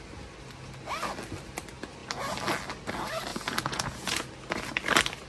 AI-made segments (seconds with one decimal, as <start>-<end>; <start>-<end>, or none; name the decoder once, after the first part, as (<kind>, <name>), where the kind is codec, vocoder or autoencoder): 3.3-4.3 (vocoder, Vocos)